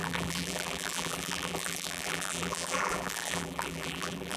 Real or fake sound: fake